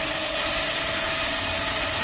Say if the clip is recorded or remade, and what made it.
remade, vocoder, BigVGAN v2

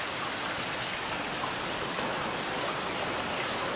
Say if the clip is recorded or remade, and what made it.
remade, vocoder, BigVGAN v2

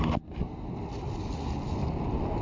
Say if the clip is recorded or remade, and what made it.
recorded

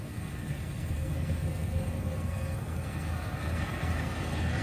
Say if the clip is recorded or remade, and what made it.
remade, codec, SNAC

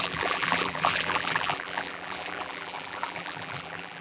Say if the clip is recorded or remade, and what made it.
remade, vocoder, BigVGAN v2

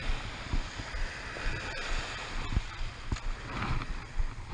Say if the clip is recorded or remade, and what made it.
recorded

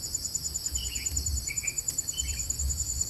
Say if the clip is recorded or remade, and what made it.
recorded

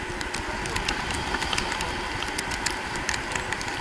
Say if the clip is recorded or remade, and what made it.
recorded